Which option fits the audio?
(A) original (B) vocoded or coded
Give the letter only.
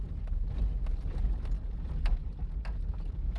A